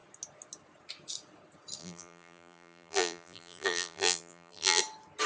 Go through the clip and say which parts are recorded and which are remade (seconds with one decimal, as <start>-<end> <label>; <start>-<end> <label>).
0.0-1.8 recorded; 1.8-4.8 remade; 4.8-5.3 recorded